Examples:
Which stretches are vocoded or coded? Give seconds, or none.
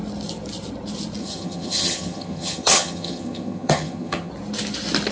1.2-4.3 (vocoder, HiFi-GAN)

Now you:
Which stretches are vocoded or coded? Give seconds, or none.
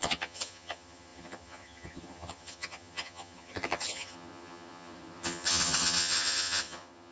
0.0-7.1 (vocoder, HiFi-GAN)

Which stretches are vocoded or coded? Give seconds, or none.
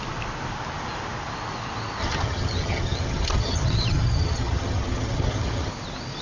2.0-5.7 (vocoder, HiFi-GAN)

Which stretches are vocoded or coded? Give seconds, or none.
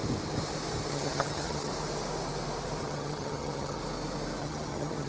0.9-1.7 (vocoder, HiFi-GAN); 2.8-3.8; 4.4-5.1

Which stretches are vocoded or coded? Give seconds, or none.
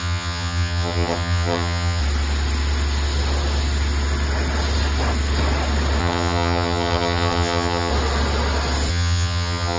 0.0-2.0 (vocoder, HiFi-GAN); 6.0-7.9; 8.9-9.8